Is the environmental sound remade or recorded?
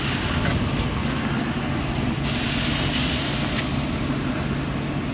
recorded